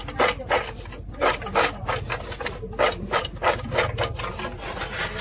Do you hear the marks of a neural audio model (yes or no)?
no